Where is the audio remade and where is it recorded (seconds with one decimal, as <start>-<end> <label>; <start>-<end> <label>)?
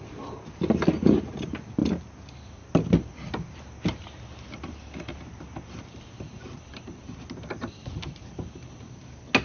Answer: 0.0-9.4 recorded